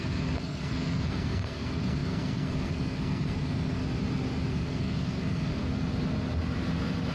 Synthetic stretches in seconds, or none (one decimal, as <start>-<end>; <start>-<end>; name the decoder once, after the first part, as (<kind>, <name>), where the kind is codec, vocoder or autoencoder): 0.0-3.8 (codec, SNAC); 4.5-5.6